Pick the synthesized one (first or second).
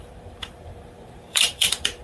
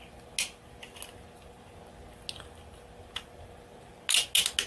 first